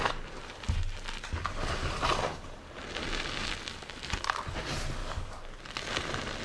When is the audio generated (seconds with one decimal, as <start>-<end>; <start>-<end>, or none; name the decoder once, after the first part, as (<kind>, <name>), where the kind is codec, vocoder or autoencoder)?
5.0-5.6 (codec, DAC)